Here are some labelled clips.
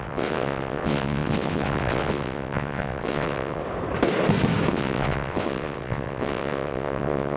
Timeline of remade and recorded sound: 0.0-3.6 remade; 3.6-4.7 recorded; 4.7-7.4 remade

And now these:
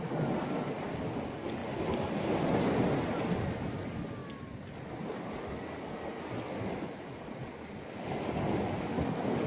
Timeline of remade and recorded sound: 0.0-9.5 recorded

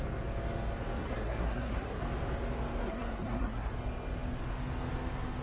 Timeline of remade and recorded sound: 0.0-1.0 recorded; 1.0-2.0 remade; 2.0-2.8 recorded; 2.8-3.7 remade; 3.7-5.4 recorded

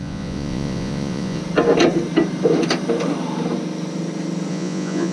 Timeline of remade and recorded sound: 0.0-1.4 remade; 1.4-4.5 recorded; 4.5-5.1 remade

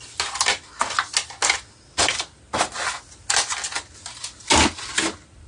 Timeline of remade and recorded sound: 0.0-5.5 recorded

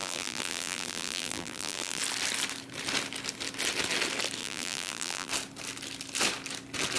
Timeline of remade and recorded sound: 0.0-2.0 remade; 2.0-4.4 recorded; 4.4-5.3 remade; 5.3-7.0 recorded

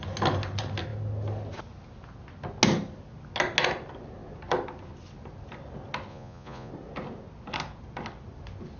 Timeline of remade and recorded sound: 0.0-6.1 recorded; 6.1-6.7 remade; 6.7-8.8 recorded